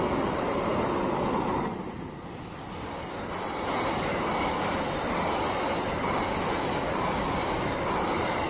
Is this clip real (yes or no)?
yes